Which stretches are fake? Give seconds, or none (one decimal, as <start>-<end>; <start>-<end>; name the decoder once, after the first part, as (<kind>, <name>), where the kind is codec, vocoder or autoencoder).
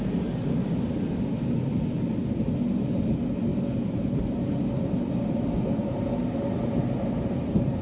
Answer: none